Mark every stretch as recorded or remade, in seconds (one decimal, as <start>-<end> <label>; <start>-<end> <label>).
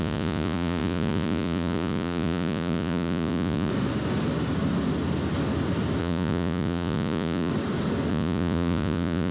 0.0-3.7 remade; 3.7-6.0 recorded; 6.0-7.5 remade; 7.5-8.1 recorded; 8.1-9.3 remade